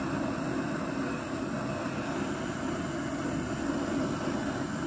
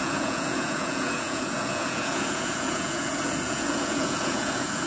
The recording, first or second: first